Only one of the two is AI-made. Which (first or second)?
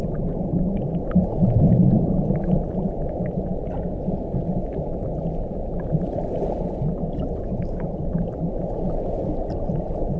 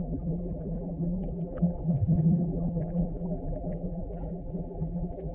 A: second